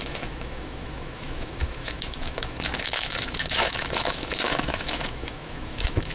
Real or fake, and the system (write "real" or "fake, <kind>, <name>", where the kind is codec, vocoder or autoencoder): fake, autoencoder, DAC-VAE